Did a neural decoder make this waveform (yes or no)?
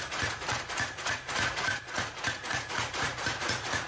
yes